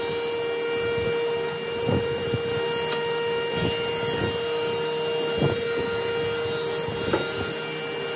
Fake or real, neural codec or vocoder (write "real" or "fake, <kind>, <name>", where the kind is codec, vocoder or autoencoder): real